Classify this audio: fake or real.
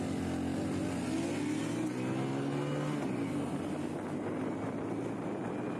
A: real